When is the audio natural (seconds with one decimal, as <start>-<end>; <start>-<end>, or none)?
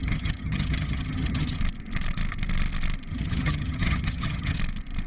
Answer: 1.6-3.1; 4.6-5.1